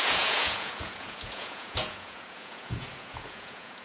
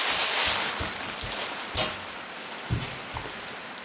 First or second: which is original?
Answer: second